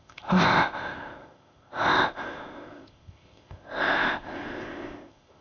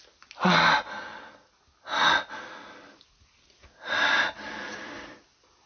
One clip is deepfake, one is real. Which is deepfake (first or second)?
first